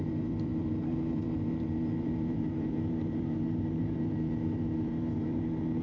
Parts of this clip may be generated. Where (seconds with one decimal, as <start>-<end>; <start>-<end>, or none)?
0.0-5.8